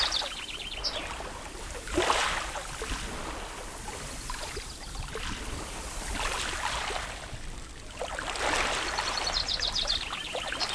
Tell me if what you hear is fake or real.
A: real